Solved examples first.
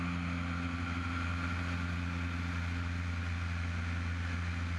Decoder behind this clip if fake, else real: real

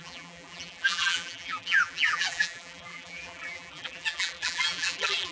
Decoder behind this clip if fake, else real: fake, vocoder, BigVGAN v2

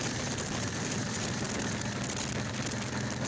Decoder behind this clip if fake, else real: real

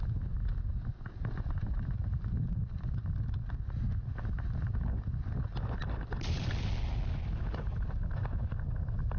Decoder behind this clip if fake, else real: real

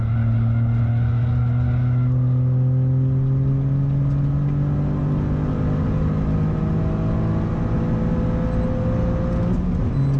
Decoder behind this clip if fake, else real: real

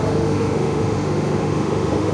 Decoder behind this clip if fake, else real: fake, autoencoder, DAC-VAE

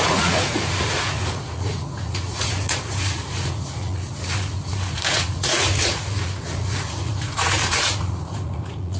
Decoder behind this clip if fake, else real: fake, vocoder, Vocos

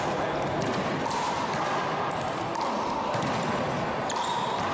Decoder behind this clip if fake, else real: real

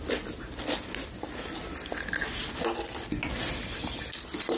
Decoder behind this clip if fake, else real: real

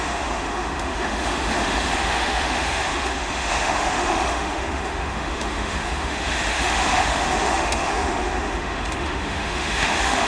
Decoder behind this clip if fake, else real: fake, autoencoder, DAC-VAE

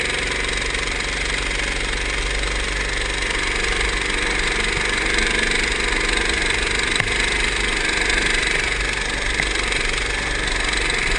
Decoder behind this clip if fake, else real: real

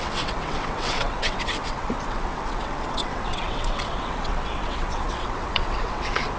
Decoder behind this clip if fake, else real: fake, vocoder, WaveNeXt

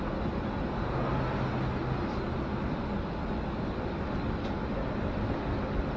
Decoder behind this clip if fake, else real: real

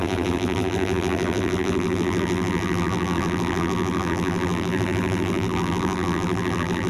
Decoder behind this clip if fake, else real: fake, vocoder, BigVGAN v2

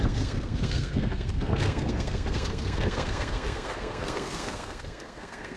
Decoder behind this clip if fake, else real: fake, codec, SNAC